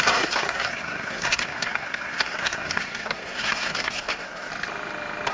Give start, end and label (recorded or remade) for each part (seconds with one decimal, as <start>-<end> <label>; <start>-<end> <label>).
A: 0.0-4.5 remade; 4.5-5.3 recorded